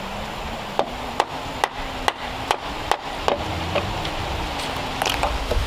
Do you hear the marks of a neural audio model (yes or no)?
no